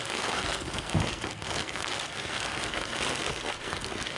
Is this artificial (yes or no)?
yes